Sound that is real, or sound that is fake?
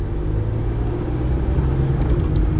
real